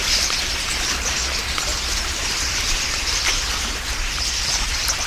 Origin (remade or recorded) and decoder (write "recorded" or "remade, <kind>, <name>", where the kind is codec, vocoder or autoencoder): remade, vocoder, BigVGAN v2